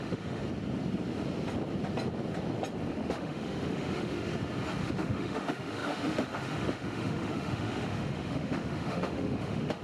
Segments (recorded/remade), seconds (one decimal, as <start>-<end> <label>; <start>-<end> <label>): 0.0-0.4 remade; 0.4-2.9 recorded; 2.9-4.3 remade; 4.3-4.8 recorded; 4.8-9.8 remade